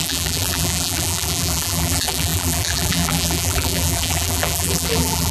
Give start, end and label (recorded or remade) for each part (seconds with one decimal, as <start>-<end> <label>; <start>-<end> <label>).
0.0-5.3 remade